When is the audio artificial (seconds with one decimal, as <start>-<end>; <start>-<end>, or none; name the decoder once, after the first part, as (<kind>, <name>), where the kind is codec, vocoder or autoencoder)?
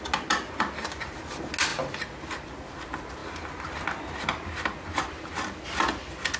none